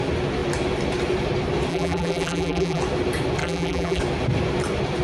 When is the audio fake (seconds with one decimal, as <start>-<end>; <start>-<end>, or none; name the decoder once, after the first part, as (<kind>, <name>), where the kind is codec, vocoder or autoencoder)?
1.7-2.8 (vocoder, BigVGAN v2); 3.4-4.0

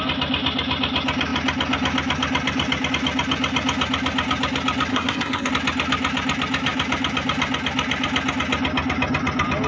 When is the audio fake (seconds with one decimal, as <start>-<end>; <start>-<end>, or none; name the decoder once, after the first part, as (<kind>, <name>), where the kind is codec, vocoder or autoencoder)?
4.9-5.5 (codec, SNAC)

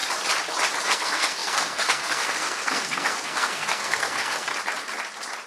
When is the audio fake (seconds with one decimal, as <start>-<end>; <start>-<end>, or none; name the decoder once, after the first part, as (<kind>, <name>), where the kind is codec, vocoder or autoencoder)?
0.8-4.5 (codec, SNAC)

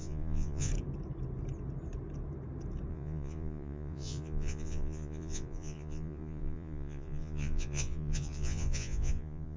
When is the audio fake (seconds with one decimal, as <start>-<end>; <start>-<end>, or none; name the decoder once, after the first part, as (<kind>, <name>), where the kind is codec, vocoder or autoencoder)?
0.0-0.7 (vocoder, Vocos); 2.9-9.6